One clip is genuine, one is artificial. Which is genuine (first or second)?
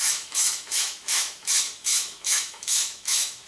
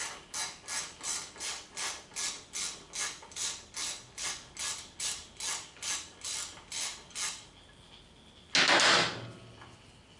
second